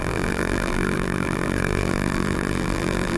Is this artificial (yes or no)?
yes